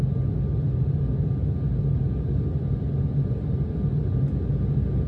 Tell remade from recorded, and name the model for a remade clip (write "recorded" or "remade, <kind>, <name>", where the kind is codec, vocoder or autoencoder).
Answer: recorded